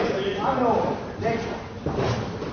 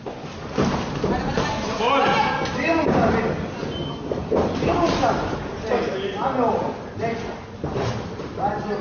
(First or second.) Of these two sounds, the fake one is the first